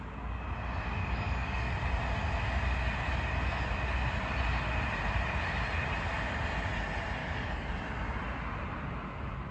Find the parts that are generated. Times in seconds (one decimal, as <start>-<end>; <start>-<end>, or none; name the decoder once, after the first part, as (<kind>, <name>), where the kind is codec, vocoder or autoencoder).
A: 1.0-1.7 (codec, DAC); 7.2-7.7